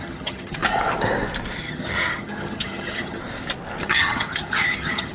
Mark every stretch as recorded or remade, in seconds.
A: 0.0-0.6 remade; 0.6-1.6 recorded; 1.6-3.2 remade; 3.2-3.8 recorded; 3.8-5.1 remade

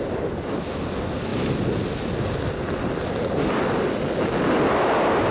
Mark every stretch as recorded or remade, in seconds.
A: 0.0-5.3 recorded